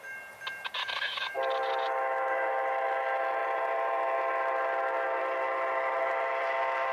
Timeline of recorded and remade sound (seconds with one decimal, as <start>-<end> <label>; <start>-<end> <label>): 0.0-0.8 recorded; 0.8-1.4 remade; 1.4-6.9 recorded